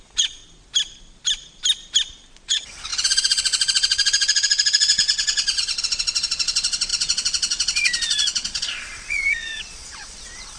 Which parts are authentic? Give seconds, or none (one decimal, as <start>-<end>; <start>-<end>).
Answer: 0.4-2.4